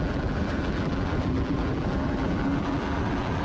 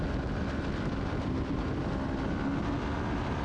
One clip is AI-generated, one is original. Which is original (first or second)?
second